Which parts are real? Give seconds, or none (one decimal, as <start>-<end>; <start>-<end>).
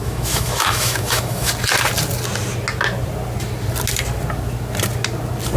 1.5-5.6